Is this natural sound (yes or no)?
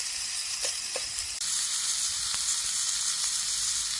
no